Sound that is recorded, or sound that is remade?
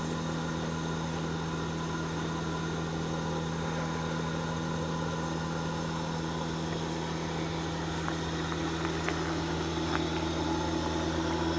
recorded